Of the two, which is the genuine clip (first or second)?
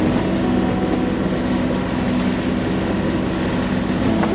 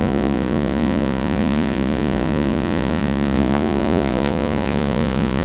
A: first